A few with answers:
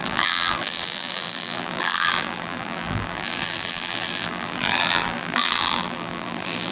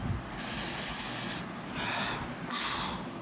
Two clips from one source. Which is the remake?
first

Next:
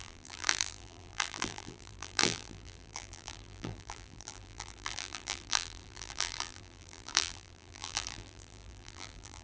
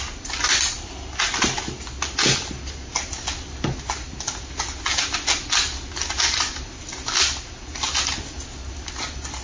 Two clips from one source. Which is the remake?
first